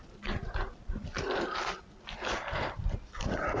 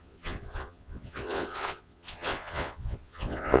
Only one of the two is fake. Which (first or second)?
second